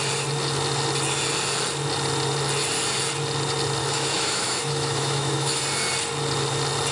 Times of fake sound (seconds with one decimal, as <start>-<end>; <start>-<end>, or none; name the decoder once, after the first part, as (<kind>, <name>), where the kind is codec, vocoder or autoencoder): 3.8-5.6 (autoencoder, DAC-VAE)